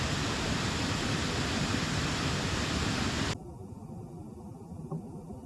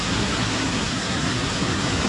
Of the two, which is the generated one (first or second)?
second